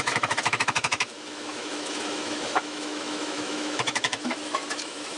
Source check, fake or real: fake